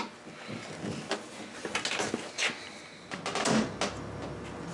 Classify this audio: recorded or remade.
recorded